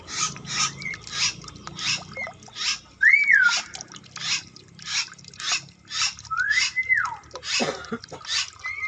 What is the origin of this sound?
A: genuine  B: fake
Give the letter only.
A